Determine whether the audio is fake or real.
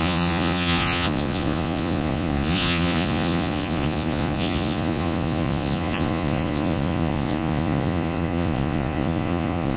fake